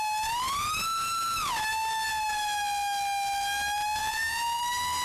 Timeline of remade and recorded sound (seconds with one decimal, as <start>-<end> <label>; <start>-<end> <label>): 0.0-4.0 recorded; 4.0-4.6 remade; 4.6-5.0 recorded